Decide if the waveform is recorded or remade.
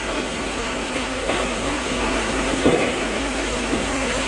remade